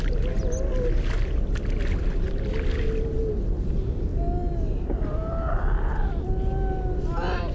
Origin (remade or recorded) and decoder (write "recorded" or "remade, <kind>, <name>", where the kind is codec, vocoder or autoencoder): recorded